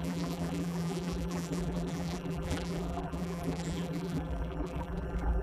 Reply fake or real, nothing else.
fake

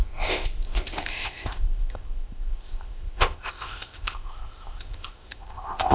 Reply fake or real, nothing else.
fake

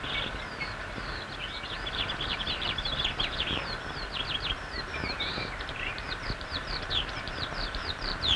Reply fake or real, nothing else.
fake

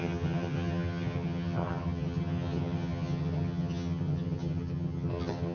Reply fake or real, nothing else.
fake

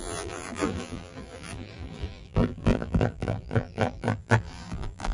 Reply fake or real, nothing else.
fake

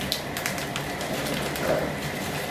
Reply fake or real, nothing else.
real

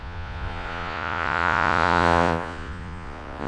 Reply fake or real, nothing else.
fake